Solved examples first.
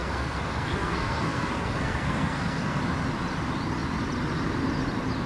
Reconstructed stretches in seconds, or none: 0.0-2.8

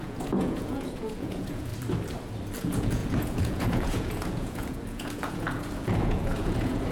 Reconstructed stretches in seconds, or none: 0.0-1.7; 2.6-6.9